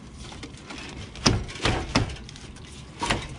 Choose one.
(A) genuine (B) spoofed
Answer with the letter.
A